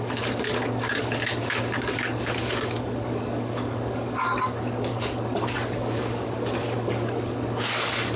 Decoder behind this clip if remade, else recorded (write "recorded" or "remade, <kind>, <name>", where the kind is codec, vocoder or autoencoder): remade, codec, DAC